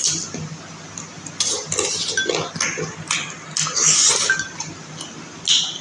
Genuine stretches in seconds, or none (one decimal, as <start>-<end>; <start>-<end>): 0.0-5.8